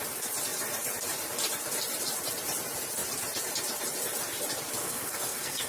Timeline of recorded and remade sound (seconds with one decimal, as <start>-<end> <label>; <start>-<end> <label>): 0.0-4.8 recorded; 4.8-5.7 remade